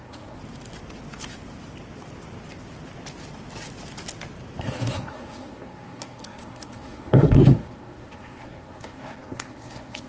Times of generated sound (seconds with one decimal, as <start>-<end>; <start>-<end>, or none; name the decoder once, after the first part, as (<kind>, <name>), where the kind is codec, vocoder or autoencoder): 0.0-0.4 (codec, SNAC); 4.6-10.1